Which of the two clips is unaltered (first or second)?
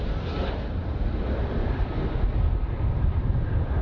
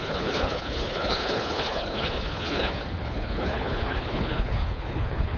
first